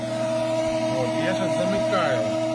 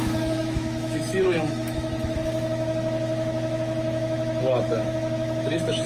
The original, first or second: first